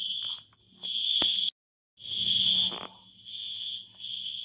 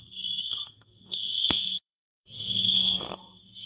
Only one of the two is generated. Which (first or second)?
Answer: second